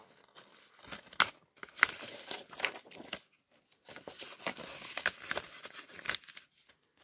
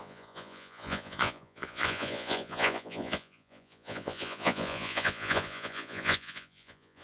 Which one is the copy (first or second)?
second